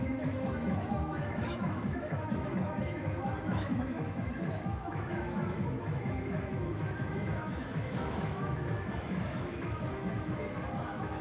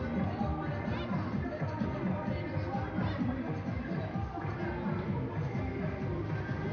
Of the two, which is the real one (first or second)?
second